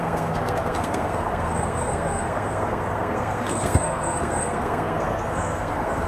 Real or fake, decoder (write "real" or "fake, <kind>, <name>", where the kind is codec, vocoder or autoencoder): fake, codec, SNAC